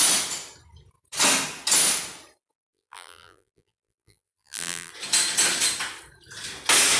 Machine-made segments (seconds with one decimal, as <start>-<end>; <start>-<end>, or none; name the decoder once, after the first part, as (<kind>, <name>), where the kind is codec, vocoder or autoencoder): 2.6-4.9 (vocoder, BigVGAN v2)